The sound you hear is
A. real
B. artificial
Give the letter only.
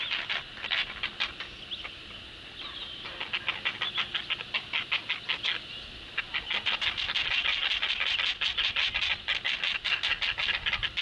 A